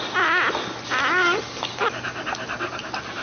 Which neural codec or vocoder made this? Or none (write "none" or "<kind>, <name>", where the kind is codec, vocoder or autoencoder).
none